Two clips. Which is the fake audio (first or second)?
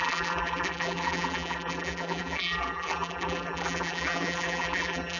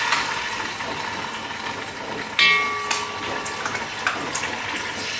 first